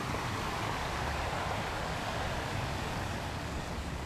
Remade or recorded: remade